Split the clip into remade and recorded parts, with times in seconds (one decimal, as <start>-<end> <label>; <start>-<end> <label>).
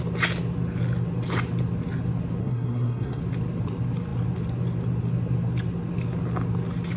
0.0-2.4 recorded; 2.4-3.2 remade; 3.2-7.0 recorded